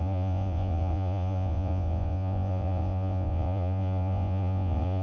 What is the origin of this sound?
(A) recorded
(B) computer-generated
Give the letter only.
B